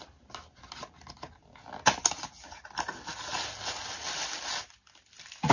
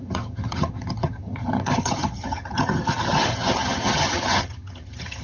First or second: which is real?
first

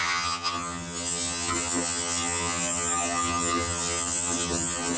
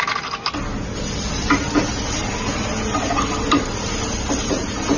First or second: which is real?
second